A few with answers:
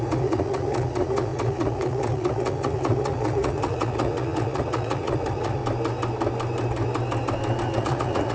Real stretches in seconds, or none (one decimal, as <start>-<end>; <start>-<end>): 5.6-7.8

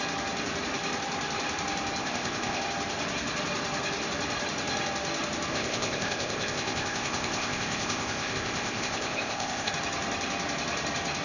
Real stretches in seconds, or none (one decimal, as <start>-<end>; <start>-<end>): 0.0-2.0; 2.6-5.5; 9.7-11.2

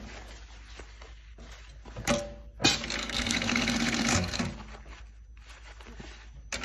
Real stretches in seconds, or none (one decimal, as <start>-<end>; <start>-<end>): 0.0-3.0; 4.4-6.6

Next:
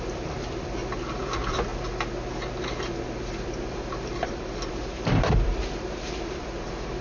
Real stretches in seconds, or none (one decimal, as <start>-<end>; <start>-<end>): 1.7-3.3

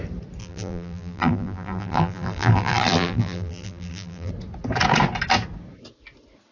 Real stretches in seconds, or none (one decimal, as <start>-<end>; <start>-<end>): 0.0-0.4; 4.3-6.5

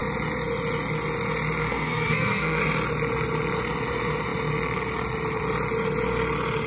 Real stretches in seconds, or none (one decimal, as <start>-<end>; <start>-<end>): 0.0-1.6; 2.6-6.7